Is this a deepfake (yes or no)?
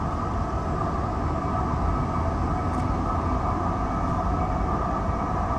no